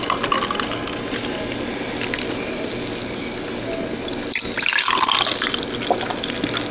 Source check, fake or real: real